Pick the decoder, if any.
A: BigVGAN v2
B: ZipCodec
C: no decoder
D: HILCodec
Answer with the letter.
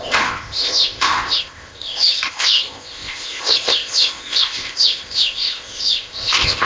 B